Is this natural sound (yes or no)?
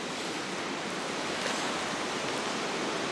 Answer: yes